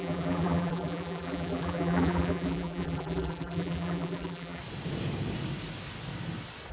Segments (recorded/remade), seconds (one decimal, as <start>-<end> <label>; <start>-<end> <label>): 0.0-4.6 remade; 4.6-6.7 recorded